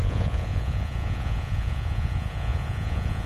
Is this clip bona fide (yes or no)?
no